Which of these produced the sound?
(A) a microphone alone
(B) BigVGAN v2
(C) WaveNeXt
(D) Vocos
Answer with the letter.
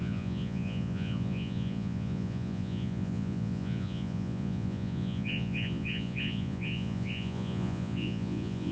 D